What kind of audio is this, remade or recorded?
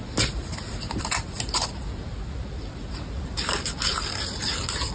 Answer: remade